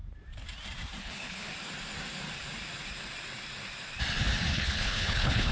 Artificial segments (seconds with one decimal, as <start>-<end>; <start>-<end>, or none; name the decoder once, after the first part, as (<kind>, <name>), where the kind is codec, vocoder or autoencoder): 1.0-1.5 (codec, HILCodec); 4.5-5.5